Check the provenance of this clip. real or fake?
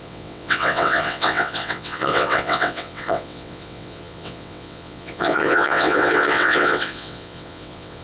fake